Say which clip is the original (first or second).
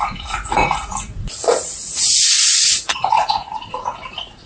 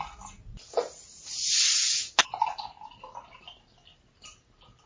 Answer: second